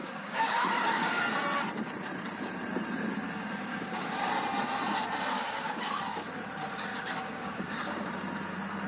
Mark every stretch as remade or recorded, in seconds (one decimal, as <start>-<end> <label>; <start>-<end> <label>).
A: 0.0-1.2 remade; 1.2-3.7 recorded; 3.7-4.3 remade; 4.3-5.3 recorded; 5.3-6.0 remade; 6.0-6.9 recorded; 6.9-8.1 remade; 8.1-8.9 recorded